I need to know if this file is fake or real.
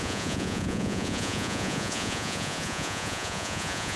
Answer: fake